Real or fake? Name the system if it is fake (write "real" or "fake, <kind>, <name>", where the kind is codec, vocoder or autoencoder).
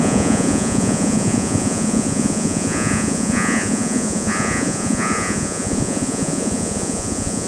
fake, vocoder, Vocos